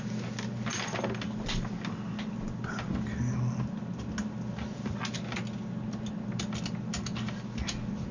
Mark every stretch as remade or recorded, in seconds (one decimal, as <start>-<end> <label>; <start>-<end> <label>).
0.0-8.1 recorded